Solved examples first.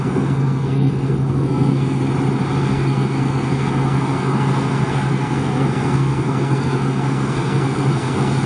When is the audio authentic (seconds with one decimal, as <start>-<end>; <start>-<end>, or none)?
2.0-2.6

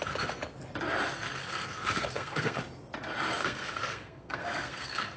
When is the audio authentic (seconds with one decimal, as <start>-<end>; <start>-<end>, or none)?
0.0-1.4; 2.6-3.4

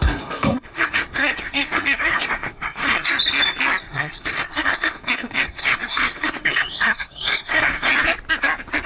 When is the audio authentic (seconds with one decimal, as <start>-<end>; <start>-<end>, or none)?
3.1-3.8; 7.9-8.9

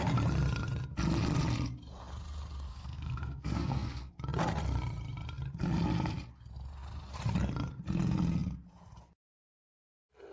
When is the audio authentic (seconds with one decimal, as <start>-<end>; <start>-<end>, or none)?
0.0-2.7; 4.1-10.3

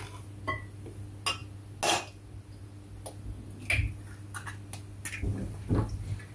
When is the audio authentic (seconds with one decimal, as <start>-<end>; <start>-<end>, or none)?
0.0-6.3

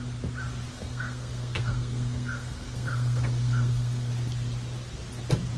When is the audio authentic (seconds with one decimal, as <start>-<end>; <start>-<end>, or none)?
0.0-0.7; 4.1-5.6